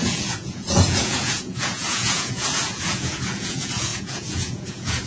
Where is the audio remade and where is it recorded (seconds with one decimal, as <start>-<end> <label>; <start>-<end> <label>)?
0.0-5.1 remade